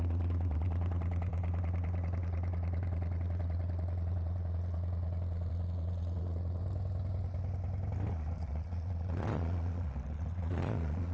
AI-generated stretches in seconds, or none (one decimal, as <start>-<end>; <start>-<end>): 0.0-6.6; 8.1-11.1